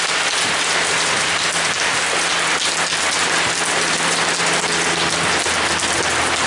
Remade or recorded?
recorded